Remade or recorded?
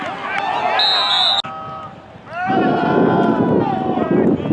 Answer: recorded